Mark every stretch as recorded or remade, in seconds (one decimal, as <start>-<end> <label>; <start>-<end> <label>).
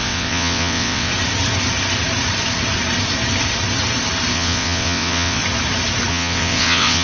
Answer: 0.0-1.1 remade; 1.1-4.3 recorded; 4.3-5.4 remade; 5.4-6.1 recorded; 6.1-7.0 remade